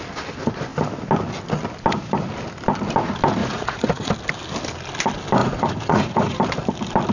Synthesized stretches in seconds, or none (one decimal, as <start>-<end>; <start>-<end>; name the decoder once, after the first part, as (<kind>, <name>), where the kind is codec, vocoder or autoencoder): 3.4-4.1 (vocoder, Vocos); 5.4-6.4